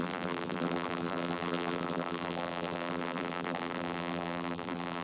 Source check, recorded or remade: remade